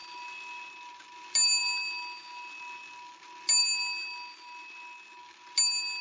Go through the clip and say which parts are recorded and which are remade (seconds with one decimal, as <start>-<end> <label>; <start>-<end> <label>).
0.0-6.0 recorded